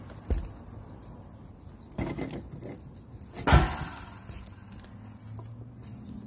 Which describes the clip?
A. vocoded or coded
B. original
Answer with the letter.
B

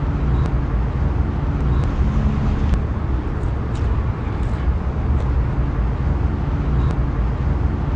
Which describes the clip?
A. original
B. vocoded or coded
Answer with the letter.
A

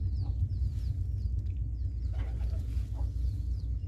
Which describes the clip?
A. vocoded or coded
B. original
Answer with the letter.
B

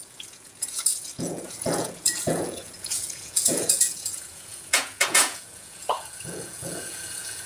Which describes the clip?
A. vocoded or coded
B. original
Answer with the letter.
A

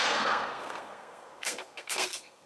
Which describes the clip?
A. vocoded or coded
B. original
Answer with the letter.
A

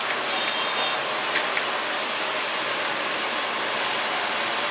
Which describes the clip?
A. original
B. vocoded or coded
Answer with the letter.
A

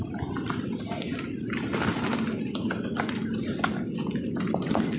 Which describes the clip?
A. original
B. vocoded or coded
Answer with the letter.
A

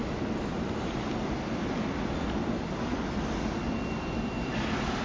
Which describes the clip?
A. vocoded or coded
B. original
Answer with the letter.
B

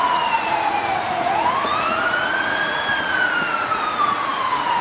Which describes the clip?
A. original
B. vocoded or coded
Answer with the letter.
B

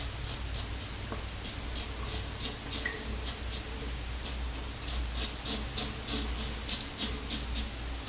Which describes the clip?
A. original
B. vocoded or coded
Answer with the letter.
A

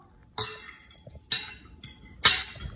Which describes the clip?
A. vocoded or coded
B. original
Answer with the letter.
B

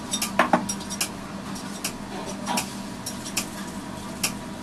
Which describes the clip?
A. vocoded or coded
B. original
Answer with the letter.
B